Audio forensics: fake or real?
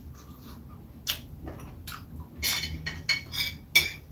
real